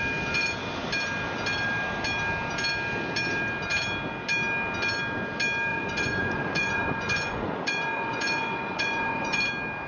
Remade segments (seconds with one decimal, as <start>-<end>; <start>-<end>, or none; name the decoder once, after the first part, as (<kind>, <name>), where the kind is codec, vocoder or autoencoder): 5.7-9.5 (vocoder, Vocos)